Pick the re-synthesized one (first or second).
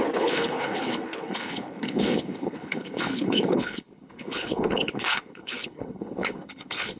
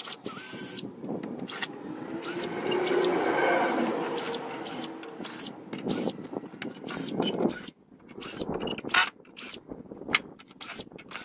first